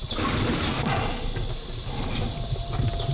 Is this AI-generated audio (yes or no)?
no